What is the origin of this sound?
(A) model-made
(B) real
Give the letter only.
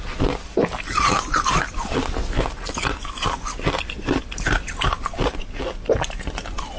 B